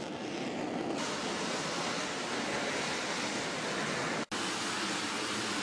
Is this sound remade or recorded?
recorded